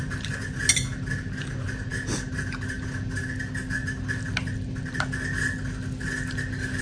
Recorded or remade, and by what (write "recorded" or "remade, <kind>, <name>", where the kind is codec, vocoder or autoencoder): recorded